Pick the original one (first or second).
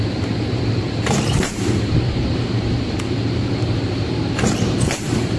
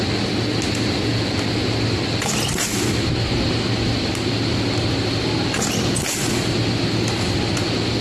second